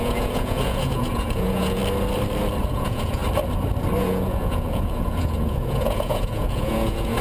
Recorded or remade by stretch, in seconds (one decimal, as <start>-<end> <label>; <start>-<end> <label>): 0.0-1.8 remade; 1.8-2.6 recorded; 2.6-3.2 remade; 3.2-4.0 recorded; 4.0-7.2 remade